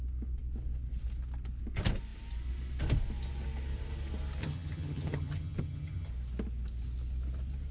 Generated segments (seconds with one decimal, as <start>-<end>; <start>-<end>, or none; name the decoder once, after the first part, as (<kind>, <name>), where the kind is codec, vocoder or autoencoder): 4.4-6.1 (vocoder, HiFi-GAN)